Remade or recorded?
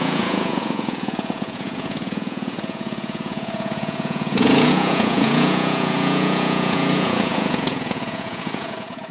remade